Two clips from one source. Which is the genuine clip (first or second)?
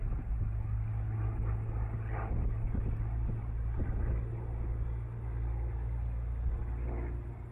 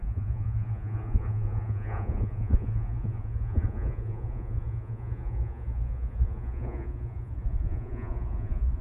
first